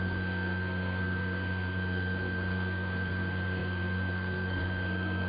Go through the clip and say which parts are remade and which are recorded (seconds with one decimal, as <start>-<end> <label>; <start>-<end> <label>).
0.0-5.3 remade